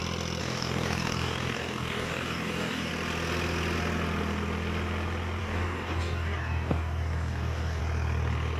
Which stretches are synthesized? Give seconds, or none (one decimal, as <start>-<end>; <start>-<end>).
0.4-2.9; 5.4-7.8